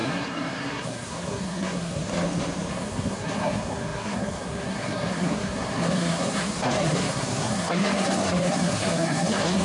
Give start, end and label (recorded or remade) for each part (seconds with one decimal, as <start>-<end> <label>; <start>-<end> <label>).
0.0-2.1 remade; 2.1-2.7 recorded; 2.7-9.6 remade